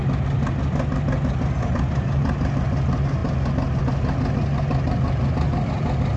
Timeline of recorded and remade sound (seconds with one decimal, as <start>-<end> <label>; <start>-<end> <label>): 0.0-6.2 recorded